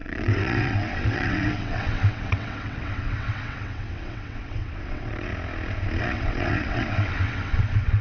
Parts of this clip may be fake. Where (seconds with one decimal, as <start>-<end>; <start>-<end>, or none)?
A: 0.0-5.3; 6.0-8.0